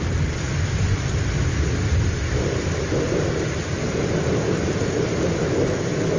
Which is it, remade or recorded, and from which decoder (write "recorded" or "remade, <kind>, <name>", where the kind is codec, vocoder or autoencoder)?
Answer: recorded